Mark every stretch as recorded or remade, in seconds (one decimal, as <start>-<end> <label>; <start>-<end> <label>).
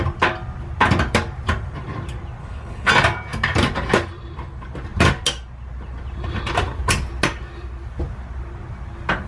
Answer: 0.0-2.4 recorded; 2.4-2.9 remade; 2.9-9.3 recorded